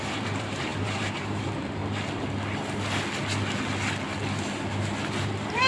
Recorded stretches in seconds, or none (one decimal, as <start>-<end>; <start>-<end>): 1.8-5.2